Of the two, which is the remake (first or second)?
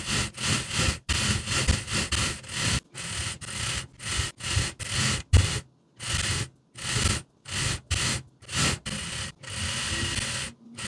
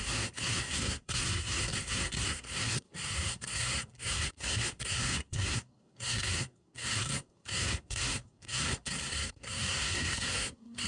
second